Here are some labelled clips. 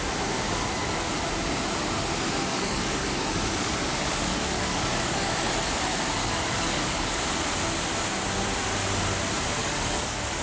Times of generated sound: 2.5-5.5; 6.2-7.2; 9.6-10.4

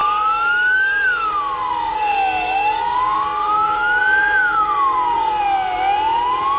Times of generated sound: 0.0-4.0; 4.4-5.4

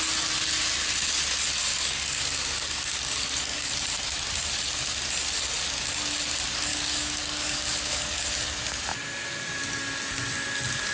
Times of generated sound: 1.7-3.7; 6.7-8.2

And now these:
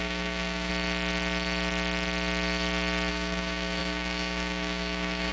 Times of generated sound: 0.0-0.7; 3.1-5.3